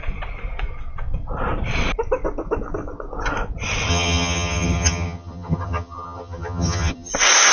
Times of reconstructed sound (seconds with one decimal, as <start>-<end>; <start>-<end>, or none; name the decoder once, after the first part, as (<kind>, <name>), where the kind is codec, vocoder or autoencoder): 3.9-7.1 (vocoder, HiFi-GAN)